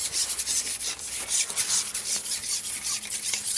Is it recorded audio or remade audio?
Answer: recorded